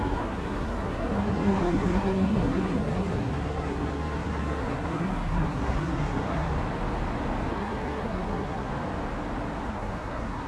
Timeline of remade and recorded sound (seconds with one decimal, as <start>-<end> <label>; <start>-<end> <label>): 0.0-6.5 remade; 6.5-7.5 recorded; 7.5-8.7 remade; 8.7-9.7 recorded; 9.7-10.5 remade